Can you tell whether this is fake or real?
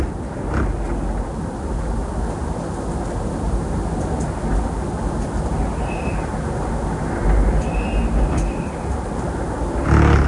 real